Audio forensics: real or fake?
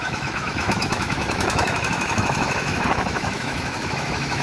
fake